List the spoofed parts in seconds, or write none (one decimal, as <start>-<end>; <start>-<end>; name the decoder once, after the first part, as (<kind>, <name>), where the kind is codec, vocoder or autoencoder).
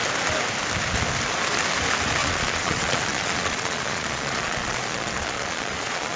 2.2-6.2 (vocoder, Vocos)